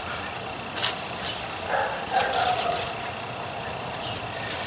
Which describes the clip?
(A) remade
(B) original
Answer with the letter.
B